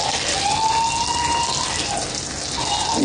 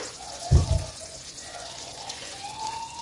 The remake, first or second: second